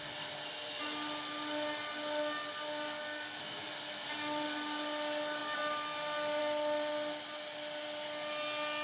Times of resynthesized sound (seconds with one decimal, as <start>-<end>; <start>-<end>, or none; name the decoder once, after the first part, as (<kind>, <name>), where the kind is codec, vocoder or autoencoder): none